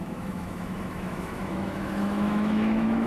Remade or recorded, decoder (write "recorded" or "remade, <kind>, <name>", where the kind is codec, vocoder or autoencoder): remade, autoencoder, DAC-VAE